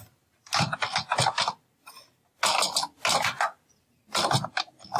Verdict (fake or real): real